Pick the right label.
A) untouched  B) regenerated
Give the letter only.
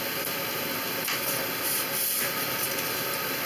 A